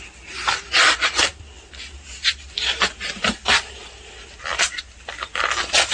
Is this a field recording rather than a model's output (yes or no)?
yes